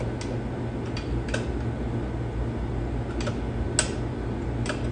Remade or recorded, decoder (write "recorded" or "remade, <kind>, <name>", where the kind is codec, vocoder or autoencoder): recorded